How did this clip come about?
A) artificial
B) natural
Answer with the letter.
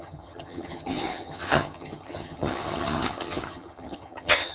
A